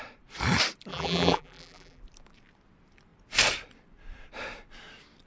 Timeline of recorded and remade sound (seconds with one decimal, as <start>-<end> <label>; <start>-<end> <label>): 0.0-0.9 recorded; 0.9-2.0 remade; 2.0-5.3 recorded